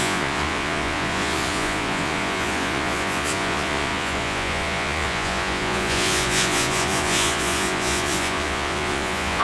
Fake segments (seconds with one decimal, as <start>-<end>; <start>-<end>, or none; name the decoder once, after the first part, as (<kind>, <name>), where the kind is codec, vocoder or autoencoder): 0.0-9.4 (vocoder, Vocos)